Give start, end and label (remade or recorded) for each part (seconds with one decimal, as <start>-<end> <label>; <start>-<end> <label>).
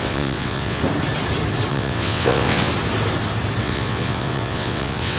0.0-0.8 remade; 0.8-1.7 recorded; 1.7-2.7 remade; 2.7-3.6 recorded; 3.6-5.2 remade